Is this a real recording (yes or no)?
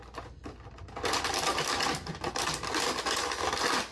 yes